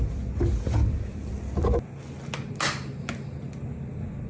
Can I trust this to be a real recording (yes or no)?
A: yes